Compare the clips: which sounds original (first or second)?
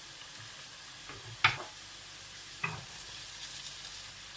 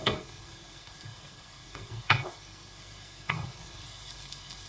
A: first